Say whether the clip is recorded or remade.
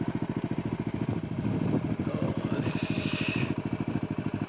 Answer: recorded